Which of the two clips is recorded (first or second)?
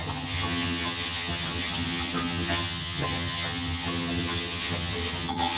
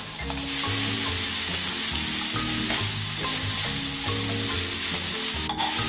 second